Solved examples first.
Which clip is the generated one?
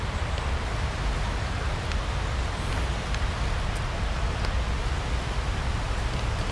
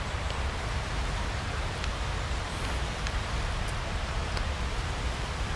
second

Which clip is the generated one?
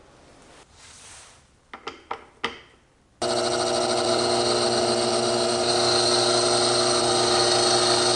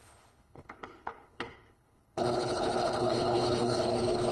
second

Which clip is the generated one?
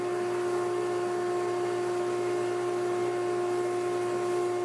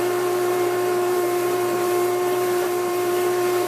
second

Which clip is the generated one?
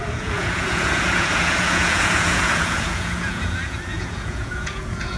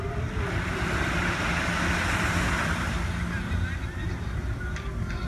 first